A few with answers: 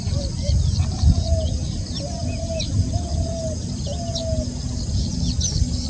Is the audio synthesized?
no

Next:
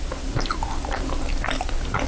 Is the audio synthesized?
no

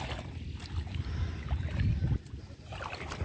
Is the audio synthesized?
no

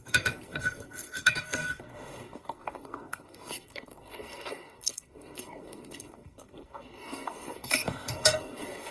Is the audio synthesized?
yes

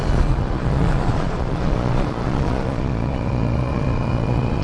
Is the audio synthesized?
yes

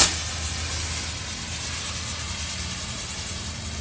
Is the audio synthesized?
no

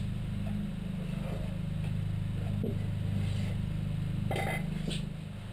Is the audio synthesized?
no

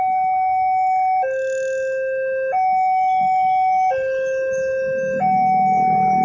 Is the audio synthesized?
no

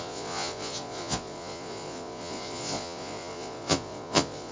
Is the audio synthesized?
yes